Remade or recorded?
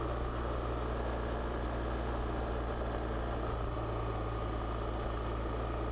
recorded